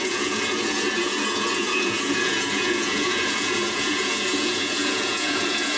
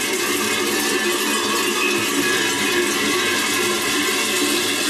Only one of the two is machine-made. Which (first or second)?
first